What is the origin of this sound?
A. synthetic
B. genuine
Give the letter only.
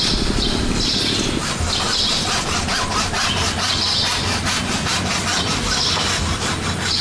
B